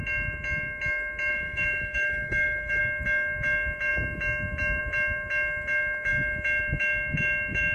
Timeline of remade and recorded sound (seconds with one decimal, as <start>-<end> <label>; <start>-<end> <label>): 0.0-1.3 recorded; 1.3-2.8 remade; 2.8-7.7 recorded